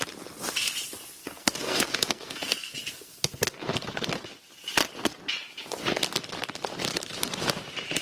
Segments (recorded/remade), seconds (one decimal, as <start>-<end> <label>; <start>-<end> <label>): 0.0-1.2 recorded; 1.2-4.1 remade; 4.1-8.0 recorded